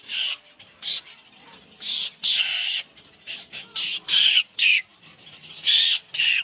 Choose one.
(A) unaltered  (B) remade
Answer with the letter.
A